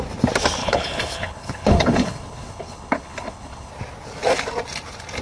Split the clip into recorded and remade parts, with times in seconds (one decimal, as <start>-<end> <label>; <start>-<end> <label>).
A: 0.0-0.6 recorded; 0.6-3.7 remade; 3.7-5.2 recorded